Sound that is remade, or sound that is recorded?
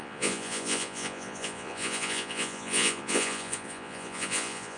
remade